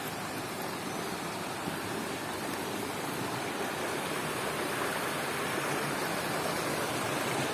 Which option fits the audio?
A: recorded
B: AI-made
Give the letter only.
B